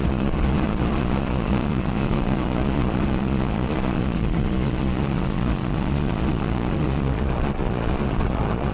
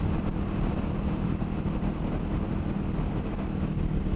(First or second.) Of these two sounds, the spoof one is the first